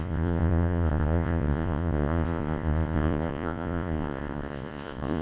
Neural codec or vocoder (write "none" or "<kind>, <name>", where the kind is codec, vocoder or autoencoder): vocoder, Vocos